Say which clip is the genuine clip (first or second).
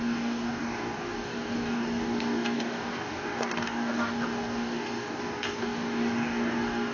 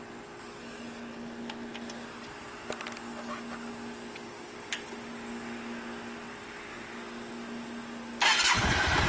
second